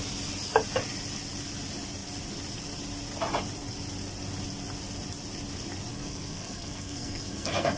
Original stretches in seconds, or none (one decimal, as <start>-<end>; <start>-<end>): 0.0-5.9